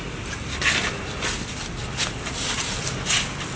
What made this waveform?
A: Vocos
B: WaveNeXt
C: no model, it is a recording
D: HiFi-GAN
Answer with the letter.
C